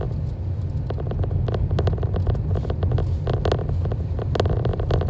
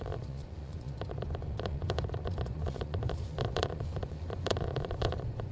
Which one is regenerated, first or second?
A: second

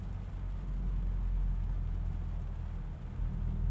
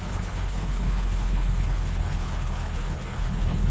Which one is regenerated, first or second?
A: second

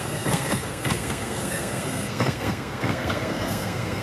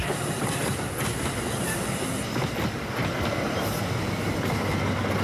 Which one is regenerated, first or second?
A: first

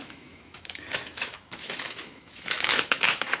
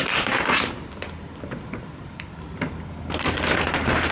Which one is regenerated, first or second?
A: first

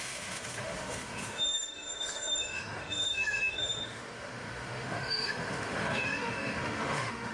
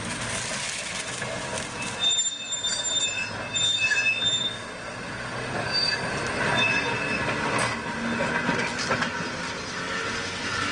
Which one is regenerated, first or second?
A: first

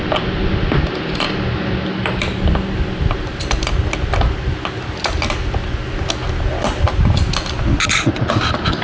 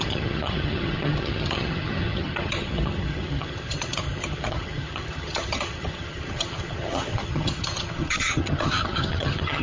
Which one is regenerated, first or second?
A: second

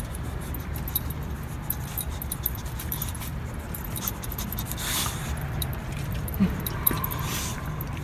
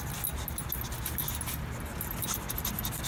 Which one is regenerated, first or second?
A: first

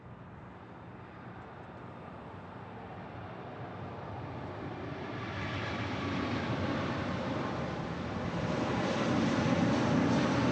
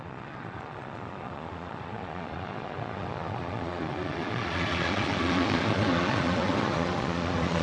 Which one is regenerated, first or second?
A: second